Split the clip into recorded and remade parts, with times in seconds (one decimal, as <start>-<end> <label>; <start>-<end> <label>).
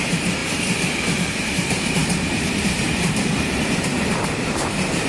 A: 0.0-0.4 remade; 0.4-1.2 recorded; 1.2-5.1 remade